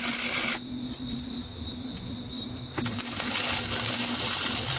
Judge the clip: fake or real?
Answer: fake